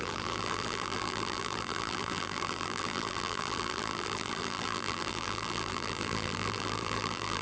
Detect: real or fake fake